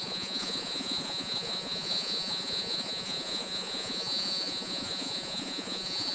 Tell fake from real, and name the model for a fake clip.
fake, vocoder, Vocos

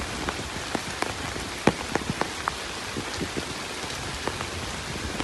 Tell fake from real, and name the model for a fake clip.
real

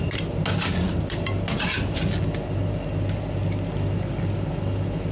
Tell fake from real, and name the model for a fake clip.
real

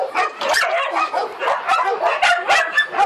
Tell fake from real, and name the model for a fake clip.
real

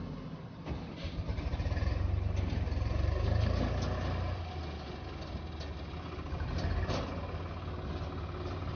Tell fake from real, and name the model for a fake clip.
real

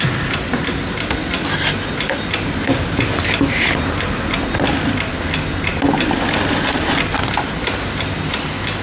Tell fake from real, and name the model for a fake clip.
real